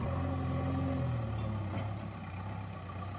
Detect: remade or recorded recorded